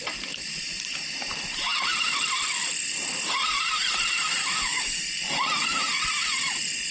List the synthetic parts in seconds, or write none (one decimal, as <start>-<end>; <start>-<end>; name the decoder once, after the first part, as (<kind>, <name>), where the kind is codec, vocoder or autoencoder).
4.4-5.0 (autoencoder, DAC-VAE)